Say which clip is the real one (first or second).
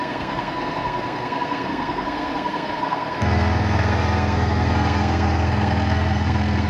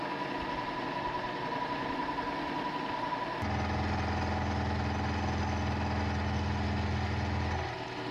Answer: second